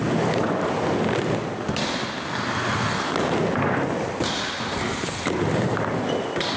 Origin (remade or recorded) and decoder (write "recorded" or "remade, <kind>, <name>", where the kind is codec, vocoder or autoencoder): recorded